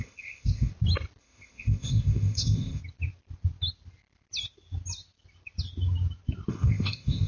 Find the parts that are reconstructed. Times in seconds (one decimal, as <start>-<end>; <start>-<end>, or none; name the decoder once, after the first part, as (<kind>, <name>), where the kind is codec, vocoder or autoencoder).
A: 0.0-0.7 (codec, ZipCodec); 1.2-2.8; 6.5-7.3